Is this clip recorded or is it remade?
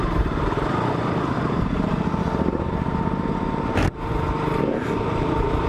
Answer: remade